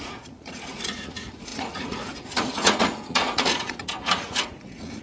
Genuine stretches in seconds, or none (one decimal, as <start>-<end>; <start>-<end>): none